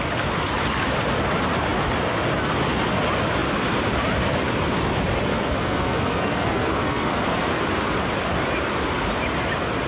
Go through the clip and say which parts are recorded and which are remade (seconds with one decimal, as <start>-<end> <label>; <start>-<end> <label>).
0.0-5.3 recorded; 5.3-7.2 remade; 7.2-9.9 recorded